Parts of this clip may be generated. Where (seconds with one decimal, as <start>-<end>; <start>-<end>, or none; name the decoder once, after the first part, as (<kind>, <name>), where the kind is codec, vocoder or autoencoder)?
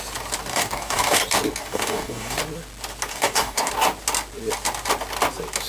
0.5-1.2 (codec, DAC); 1.6-2.4; 3.1-3.7